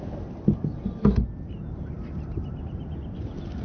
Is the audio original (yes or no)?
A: yes